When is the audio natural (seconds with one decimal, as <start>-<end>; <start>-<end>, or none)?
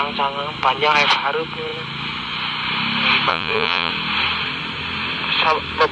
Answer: 0.0-3.3; 3.9-5.9